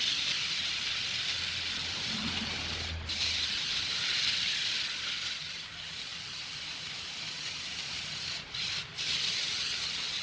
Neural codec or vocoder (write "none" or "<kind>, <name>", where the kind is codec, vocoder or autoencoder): none